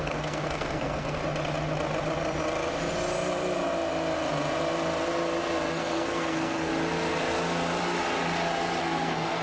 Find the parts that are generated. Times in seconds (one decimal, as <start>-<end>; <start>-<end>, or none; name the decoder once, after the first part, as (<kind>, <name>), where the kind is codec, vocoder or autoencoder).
0.0-1.2 (codec, SNAC); 5.7-6.7; 8.8-9.4